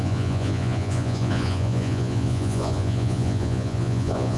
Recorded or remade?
remade